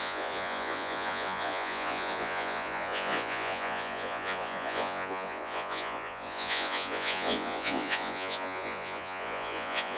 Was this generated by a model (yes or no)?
yes